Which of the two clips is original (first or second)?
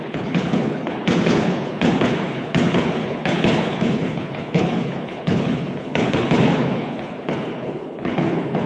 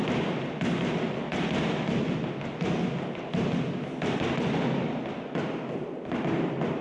second